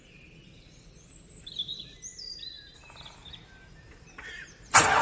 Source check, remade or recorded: recorded